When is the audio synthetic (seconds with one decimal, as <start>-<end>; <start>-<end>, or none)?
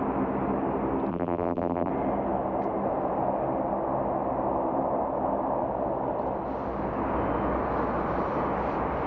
1.1-1.9